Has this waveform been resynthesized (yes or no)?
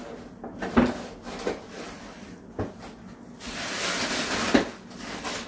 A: no